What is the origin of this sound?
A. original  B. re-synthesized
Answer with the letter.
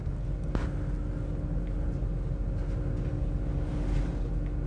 A